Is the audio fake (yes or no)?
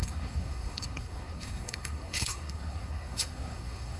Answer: yes